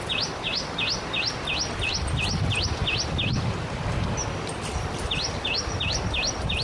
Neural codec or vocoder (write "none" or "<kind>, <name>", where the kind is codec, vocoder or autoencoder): none